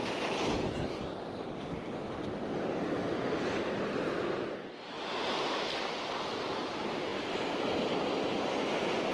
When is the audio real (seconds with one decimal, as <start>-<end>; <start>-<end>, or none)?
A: 0.0-9.1